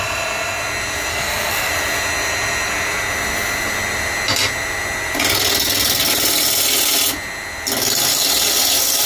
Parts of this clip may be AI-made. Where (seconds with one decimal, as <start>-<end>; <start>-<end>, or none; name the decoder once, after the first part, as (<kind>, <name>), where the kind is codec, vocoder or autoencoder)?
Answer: 1.1-1.7 (codec, SNAC)